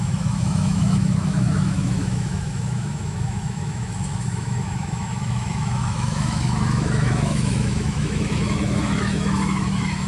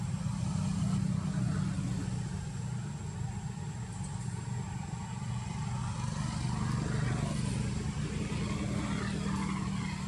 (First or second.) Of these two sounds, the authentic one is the second